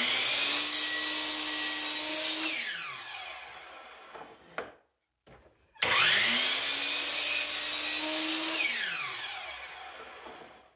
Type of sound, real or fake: real